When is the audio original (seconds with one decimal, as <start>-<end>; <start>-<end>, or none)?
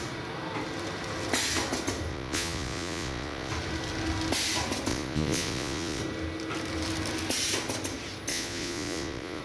0.0-2.1; 3.5-4.9; 6.0-8.3